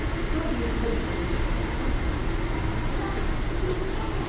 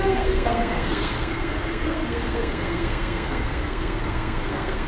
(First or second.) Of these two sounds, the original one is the first